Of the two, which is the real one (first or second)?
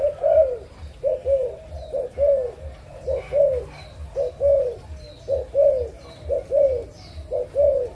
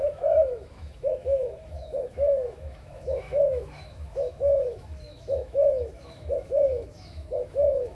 first